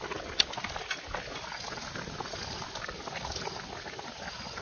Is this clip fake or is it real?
real